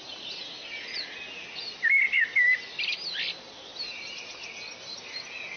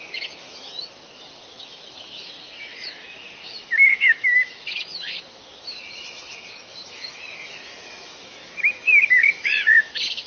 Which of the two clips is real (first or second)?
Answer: first